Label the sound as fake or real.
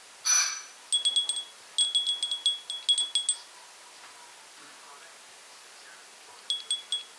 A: real